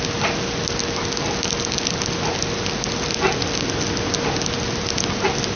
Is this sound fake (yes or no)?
no